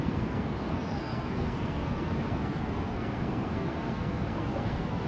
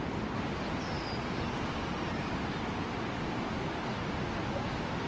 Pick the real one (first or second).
second